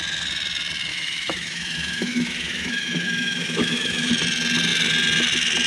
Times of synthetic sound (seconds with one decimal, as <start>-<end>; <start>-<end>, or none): 0.9-4.1